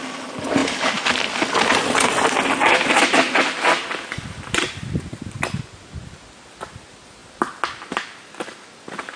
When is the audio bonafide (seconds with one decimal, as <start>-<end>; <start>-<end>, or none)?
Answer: 0.0-9.2